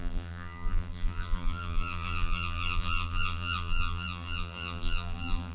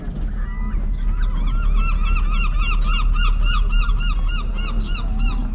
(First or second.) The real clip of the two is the second